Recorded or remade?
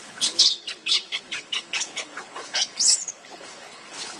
remade